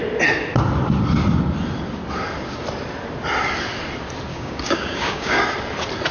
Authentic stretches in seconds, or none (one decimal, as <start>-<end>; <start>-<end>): 0.0-4.3; 5.4-6.1